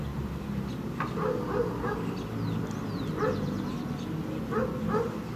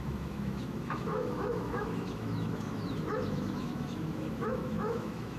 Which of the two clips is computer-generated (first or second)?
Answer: second